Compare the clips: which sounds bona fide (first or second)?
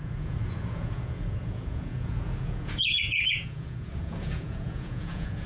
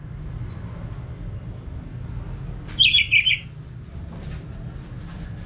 second